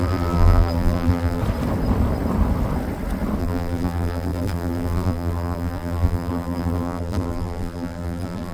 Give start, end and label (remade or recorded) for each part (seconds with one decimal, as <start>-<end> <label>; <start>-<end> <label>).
0.0-1.4 remade; 1.4-3.4 recorded; 3.4-8.5 remade